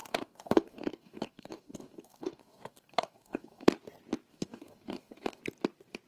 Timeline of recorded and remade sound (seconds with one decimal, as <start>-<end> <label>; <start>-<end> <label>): 0.0-3.7 remade; 3.7-4.3 recorded; 4.3-5.4 remade; 5.4-6.1 recorded